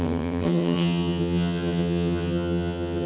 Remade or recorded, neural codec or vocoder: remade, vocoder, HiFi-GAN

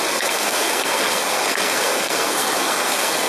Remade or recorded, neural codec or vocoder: remade, codec, SNAC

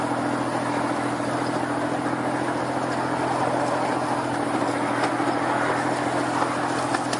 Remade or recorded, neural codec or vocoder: recorded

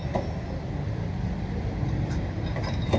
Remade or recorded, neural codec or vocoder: recorded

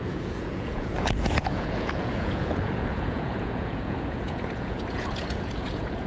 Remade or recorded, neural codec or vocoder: remade, vocoder, Vocos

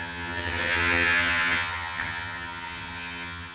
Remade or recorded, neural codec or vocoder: remade, vocoder, HiFi-GAN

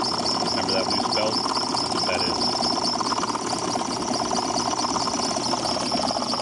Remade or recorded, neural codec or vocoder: recorded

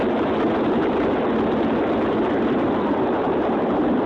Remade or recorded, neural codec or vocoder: recorded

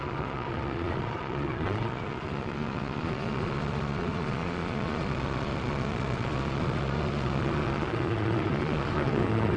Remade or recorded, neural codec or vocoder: remade, vocoder, Vocos